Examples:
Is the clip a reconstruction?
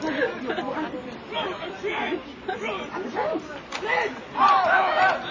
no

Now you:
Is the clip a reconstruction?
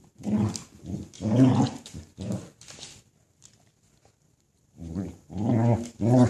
no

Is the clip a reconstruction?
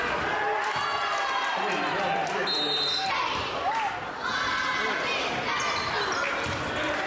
no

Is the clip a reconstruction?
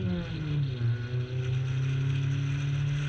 no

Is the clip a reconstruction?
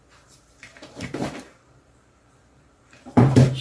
yes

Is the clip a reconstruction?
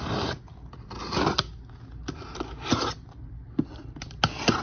no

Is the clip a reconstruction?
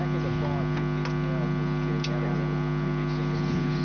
no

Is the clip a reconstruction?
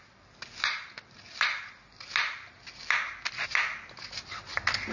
no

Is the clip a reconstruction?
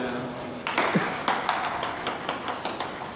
no